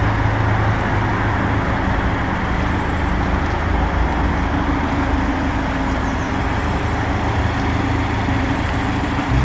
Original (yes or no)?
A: yes